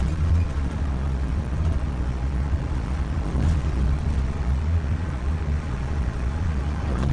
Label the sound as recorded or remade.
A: remade